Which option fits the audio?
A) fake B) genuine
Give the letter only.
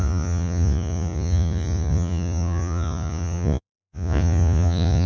A